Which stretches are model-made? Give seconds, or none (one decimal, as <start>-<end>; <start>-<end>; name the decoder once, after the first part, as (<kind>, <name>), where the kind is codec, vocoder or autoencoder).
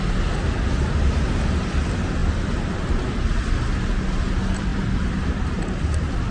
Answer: 2.2-2.7 (vocoder, BigVGAN v2); 4.7-5.4